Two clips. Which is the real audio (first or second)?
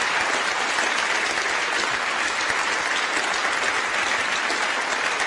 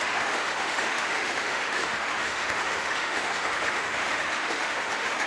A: first